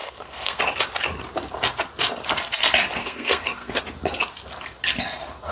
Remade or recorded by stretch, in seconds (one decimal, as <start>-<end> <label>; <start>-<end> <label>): 0.0-0.6 remade; 0.6-3.0 recorded; 3.0-3.8 remade; 3.8-5.5 recorded